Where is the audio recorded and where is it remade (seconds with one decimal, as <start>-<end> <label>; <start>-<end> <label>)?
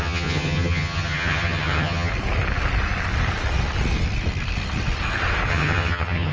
0.0-2.1 remade; 2.1-5.5 recorded; 5.5-6.3 remade